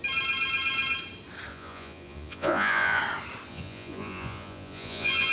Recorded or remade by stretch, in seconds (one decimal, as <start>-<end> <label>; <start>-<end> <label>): 0.0-1.5 recorded; 1.5-3.0 remade; 3.0-3.5 recorded; 3.5-5.3 remade